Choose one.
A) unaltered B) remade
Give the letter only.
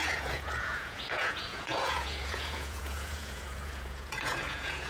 B